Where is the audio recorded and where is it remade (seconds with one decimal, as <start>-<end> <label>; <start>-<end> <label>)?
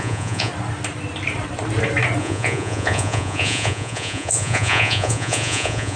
0.0-0.5 remade; 0.5-2.2 recorded; 2.2-6.0 remade